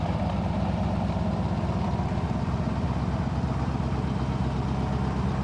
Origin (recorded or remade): recorded